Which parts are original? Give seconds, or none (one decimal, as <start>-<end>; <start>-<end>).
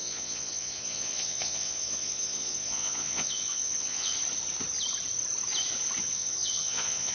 4.1-6.0